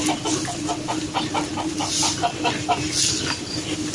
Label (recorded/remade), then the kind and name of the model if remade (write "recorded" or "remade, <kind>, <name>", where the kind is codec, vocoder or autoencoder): recorded